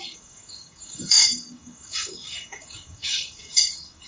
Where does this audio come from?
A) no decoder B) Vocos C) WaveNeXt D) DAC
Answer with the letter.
D